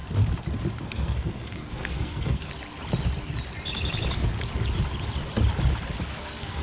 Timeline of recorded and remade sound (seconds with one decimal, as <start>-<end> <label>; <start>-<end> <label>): 0.0-0.8 recorded; 0.8-2.5 remade; 2.5-6.1 recorded; 6.1-6.6 remade